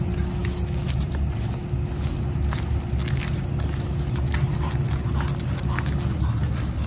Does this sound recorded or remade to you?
recorded